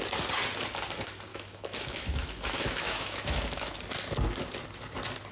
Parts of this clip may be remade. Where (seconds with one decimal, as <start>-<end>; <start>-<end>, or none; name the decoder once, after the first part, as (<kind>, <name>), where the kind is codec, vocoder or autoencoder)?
1.3-3.8 (autoencoder, DAC-VAE)